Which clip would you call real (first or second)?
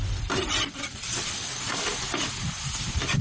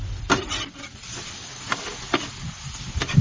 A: second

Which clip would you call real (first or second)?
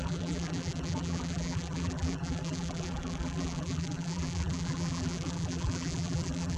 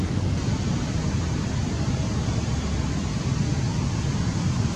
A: second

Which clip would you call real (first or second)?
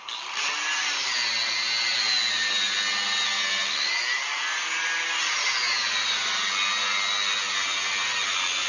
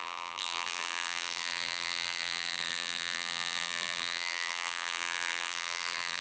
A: first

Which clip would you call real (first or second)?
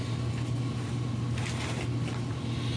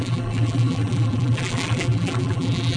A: first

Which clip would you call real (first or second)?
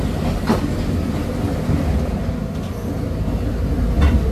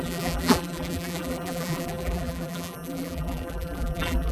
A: first